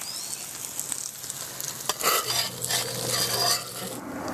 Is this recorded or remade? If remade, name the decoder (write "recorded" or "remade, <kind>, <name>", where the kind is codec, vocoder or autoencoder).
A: recorded